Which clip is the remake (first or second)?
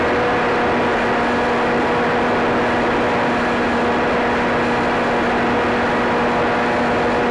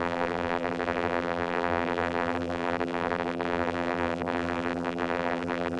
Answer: second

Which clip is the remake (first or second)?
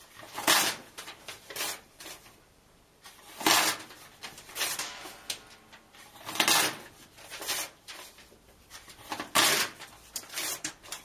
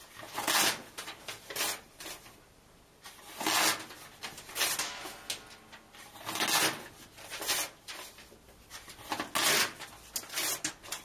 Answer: first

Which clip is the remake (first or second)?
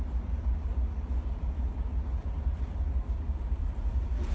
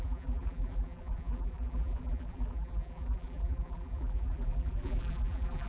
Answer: second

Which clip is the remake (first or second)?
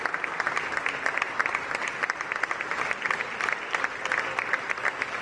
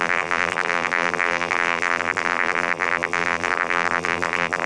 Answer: second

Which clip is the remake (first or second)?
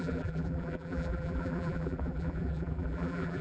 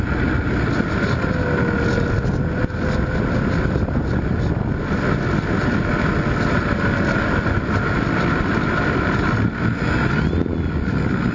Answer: first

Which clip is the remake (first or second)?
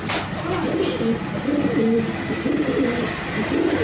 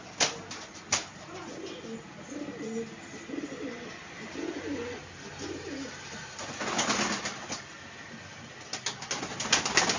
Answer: first